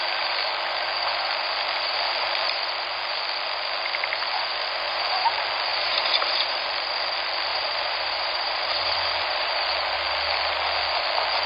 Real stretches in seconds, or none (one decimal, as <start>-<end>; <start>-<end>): 0.0-5.7; 6.6-7.5; 9.5-11.5